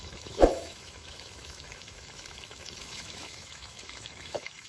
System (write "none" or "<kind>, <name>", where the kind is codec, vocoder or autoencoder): autoencoder, DAC-VAE